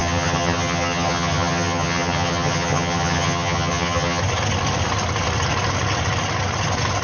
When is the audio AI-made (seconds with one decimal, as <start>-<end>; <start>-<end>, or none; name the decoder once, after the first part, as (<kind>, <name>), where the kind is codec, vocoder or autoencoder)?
0.0-4.2 (vocoder, HiFi-GAN)